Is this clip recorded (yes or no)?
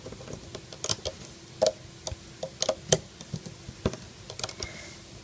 yes